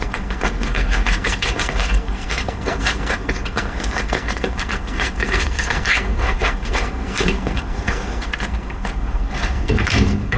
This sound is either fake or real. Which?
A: fake